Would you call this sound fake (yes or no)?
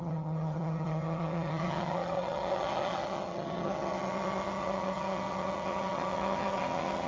yes